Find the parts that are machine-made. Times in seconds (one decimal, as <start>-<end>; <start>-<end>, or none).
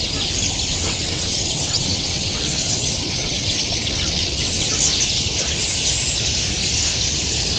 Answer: 0.7-4.7